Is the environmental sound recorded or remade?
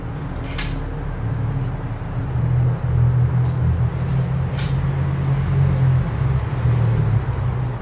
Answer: recorded